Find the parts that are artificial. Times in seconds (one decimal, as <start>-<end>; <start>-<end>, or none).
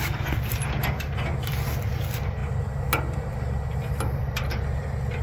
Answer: none